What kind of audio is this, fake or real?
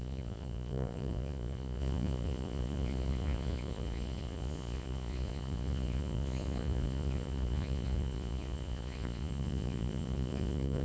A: fake